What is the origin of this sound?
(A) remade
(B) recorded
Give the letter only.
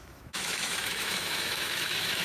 A